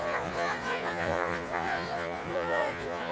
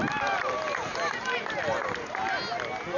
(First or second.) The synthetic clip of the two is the first